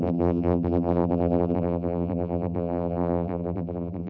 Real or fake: fake